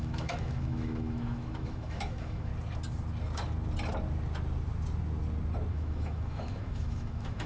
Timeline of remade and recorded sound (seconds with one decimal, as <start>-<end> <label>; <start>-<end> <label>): 0.0-2.5 remade; 2.5-5.7 recorded; 5.7-7.5 remade